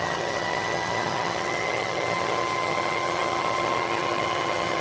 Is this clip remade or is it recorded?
remade